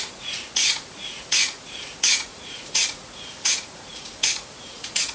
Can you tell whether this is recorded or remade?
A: remade